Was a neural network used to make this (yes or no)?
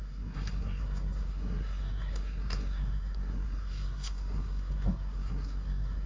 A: yes